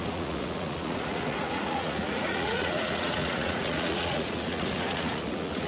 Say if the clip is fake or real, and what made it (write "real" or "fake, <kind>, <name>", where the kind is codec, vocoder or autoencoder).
fake, vocoder, Vocos